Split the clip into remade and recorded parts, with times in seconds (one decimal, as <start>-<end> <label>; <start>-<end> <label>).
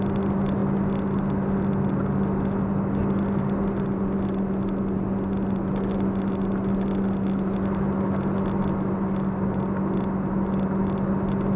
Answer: 0.0-11.6 recorded